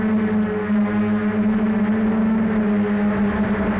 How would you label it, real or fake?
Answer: real